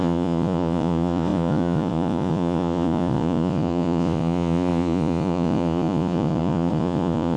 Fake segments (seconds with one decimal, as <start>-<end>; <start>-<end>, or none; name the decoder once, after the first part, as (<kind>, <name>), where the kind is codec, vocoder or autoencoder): 0.0-7.4 (vocoder, Vocos)